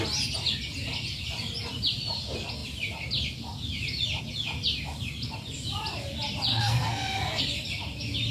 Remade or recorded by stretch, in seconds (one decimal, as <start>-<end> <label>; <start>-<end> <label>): 0.0-6.5 recorded; 6.5-7.4 remade; 7.4-8.3 recorded